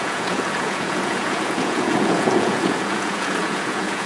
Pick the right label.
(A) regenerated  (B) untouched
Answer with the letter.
A